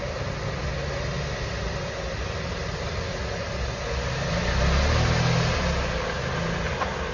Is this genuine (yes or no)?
yes